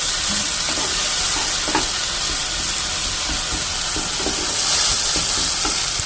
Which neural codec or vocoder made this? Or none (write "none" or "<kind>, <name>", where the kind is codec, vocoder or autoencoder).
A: none